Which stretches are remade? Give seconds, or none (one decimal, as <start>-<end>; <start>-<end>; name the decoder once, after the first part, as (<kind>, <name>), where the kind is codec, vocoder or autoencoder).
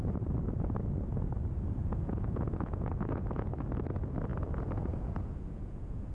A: 1.8-3.5 (vocoder, Vocos); 4.3-6.1